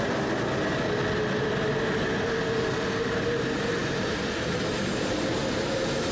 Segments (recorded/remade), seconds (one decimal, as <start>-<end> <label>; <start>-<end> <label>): 0.0-6.1 recorded